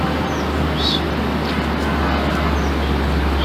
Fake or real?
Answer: real